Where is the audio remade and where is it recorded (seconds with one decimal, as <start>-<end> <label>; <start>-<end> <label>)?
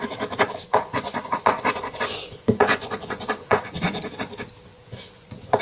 0.0-0.7 recorded; 0.7-4.1 remade; 4.1-4.7 recorded; 4.7-5.6 remade